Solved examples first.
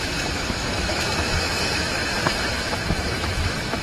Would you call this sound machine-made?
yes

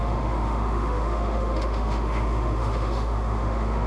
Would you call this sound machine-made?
yes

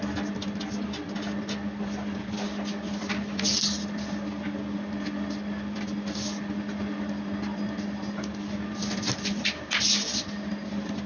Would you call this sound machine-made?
no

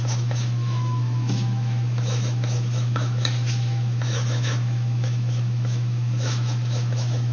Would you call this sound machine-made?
yes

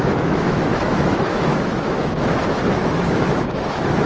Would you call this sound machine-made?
yes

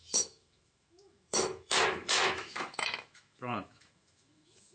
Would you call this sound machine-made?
yes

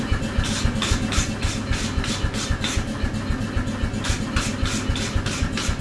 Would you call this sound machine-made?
no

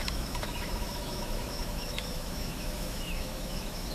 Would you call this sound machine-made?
yes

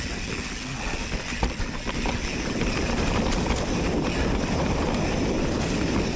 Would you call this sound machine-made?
no